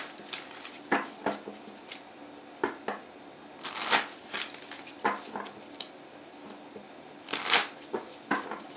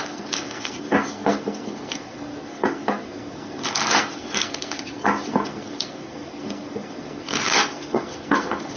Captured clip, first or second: first